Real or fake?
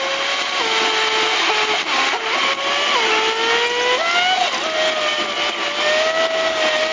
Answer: real